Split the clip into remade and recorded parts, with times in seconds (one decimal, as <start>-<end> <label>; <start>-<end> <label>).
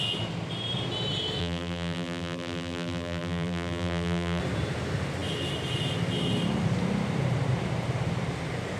0.0-1.4 recorded; 1.4-4.4 remade; 4.4-8.8 recorded